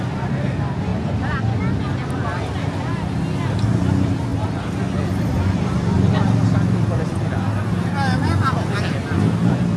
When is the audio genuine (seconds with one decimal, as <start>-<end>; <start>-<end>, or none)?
0.0-9.8